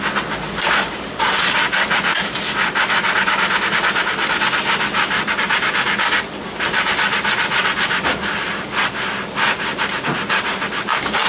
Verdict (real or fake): real